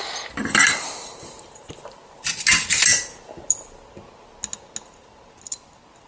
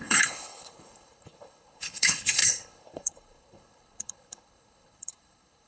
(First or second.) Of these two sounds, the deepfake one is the second